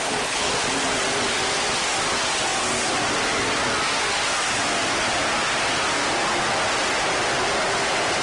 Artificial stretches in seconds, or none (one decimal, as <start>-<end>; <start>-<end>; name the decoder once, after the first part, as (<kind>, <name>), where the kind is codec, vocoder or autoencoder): 0.0-0.5 (codec, HILCodec)